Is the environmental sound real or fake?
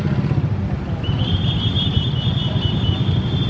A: real